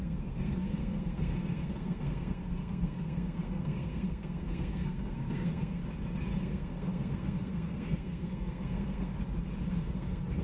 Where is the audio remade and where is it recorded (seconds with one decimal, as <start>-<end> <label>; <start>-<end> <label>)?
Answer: 0.0-5.8 remade; 5.8-6.4 recorded; 6.4-9.1 remade; 9.1-9.7 recorded; 9.7-10.4 remade